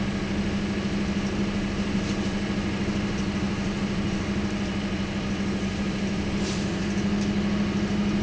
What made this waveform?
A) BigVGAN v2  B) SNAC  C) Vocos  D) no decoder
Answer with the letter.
D